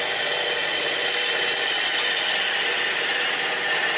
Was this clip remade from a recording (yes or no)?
no